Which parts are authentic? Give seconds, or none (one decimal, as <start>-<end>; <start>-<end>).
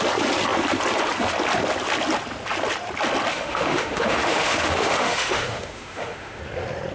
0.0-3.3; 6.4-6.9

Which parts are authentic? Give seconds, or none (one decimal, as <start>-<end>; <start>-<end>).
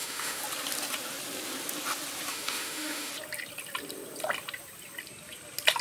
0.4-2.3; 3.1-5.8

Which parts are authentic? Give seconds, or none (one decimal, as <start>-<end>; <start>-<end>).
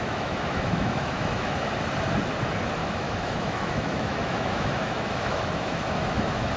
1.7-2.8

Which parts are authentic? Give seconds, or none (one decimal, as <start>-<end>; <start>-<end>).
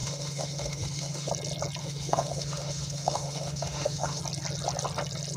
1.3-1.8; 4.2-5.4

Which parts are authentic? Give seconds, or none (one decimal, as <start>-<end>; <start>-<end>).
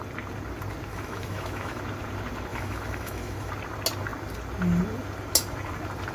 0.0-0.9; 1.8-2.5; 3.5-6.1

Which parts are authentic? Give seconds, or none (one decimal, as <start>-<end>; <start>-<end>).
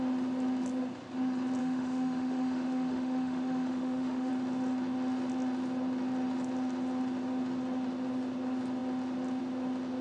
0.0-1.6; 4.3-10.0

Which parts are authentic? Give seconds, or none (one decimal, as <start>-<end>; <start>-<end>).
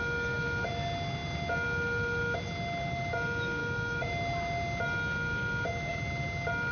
0.0-3.6; 4.1-6.7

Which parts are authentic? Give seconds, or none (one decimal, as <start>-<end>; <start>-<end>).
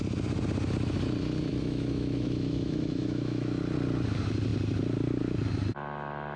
0.0-1.5; 3.6-6.4